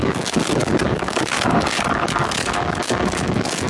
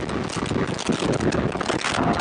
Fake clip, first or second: first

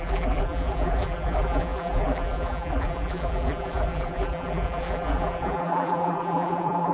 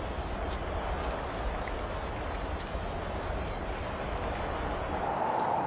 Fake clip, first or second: first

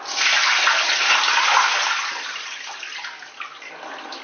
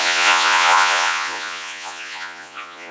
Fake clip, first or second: second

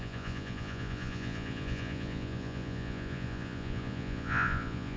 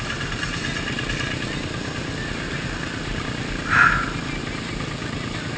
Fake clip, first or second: first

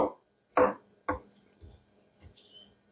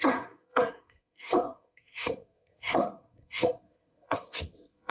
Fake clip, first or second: second